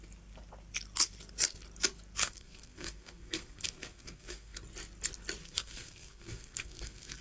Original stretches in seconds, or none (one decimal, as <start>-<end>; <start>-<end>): 0.0-2.2; 4.6-5.4